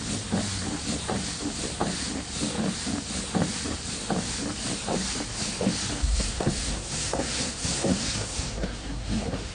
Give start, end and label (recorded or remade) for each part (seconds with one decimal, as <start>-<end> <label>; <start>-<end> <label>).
0.0-6.0 recorded; 6.0-9.5 remade